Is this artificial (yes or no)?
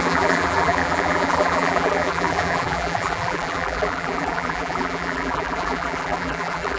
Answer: yes